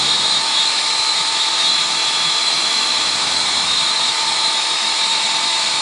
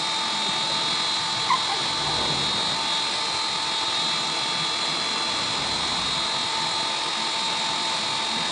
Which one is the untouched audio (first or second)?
second